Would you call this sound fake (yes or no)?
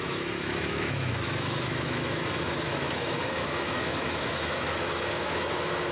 yes